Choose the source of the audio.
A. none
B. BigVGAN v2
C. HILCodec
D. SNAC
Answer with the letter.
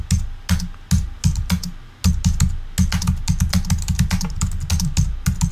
A